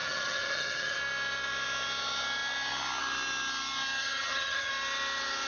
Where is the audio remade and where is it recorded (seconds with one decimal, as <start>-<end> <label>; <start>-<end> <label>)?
0.0-1.0 remade; 1.0-4.0 recorded; 4.0-4.7 remade; 4.7-5.5 recorded